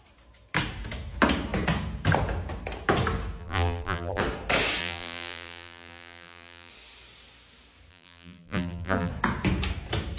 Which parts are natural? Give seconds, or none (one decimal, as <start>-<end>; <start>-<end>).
0.0-3.4; 4.2-4.8; 6.7-7.9; 9.1-10.2